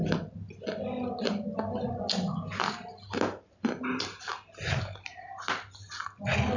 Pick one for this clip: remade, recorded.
recorded